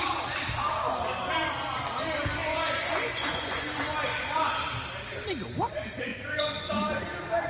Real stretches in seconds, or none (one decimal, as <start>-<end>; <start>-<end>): 0.0-2.5; 4.5-6.1; 6.9-7.5

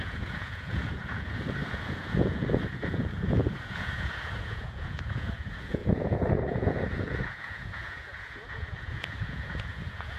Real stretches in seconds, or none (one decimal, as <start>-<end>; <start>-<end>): none

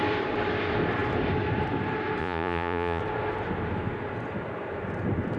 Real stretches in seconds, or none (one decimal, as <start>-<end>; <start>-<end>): 0.0-2.2; 3.0-5.4

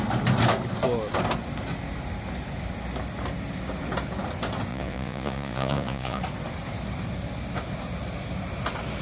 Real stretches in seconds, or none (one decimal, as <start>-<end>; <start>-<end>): 0.0-4.7; 6.2-9.0

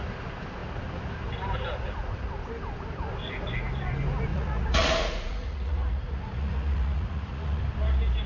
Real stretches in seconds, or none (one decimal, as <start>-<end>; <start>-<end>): 0.0-4.3; 7.6-8.3

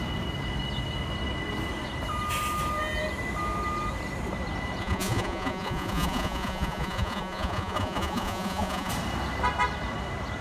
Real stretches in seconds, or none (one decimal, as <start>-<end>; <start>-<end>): 0.0-4.8; 8.9-10.4

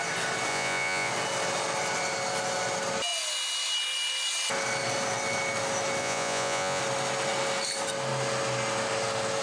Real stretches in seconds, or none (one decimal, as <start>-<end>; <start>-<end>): 0.0-0.5; 1.1-6.0; 6.8-9.4

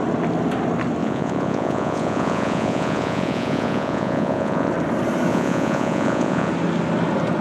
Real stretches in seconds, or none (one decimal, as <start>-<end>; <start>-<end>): 0.0-1.0; 4.7-5.3; 6.5-7.4